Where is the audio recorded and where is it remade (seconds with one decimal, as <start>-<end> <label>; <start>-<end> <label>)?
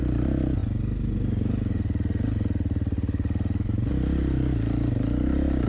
0.0-5.7 recorded